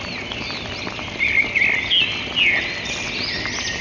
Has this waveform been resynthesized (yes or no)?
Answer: no